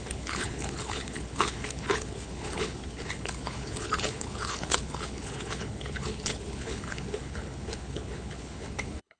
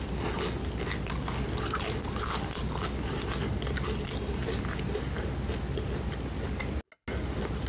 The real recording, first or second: second